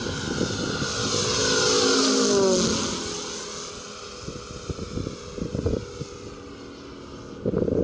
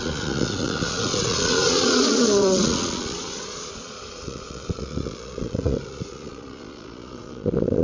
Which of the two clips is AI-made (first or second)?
second